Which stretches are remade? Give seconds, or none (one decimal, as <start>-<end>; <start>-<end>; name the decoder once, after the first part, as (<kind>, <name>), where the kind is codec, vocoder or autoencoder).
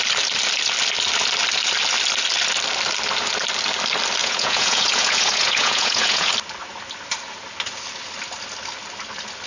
4.2-6.3 (vocoder, Vocos)